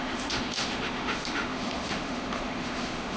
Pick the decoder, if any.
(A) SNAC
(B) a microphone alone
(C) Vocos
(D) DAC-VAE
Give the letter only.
D